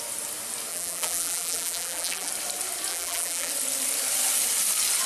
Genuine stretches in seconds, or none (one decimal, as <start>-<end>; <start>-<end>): 0.0-0.7; 2.3-2.9; 3.5-5.1